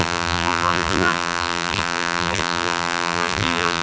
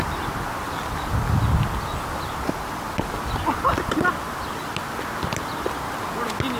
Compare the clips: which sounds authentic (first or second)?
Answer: second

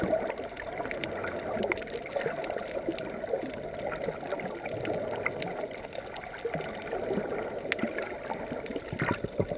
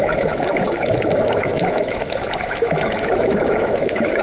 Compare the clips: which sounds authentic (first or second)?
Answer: first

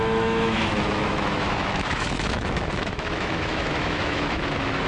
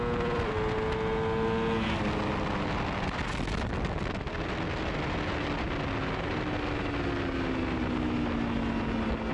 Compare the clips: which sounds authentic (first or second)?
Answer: second